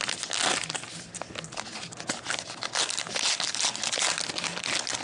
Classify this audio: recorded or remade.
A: recorded